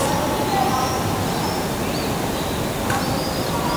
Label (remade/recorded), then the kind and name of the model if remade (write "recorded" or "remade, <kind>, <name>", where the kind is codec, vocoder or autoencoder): recorded